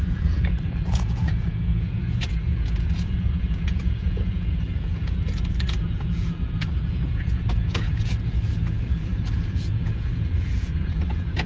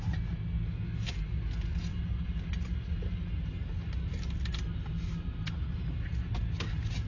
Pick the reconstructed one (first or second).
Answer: first